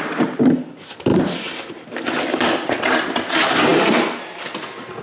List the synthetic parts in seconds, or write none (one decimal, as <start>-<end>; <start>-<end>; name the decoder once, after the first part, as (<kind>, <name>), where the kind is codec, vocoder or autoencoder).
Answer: 1.1-3.3 (vocoder, BigVGAN v2); 3.7-5.0